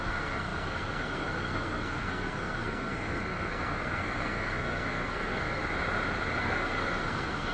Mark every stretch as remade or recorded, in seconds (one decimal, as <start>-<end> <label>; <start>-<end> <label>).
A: 0.0-5.6 remade; 5.6-6.4 recorded; 6.4-7.5 remade